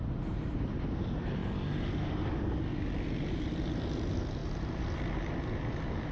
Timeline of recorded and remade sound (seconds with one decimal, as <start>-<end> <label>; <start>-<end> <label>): 0.0-1.4 remade; 1.4-3.3 recorded; 3.3-6.1 remade